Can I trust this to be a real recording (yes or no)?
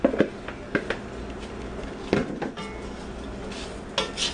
yes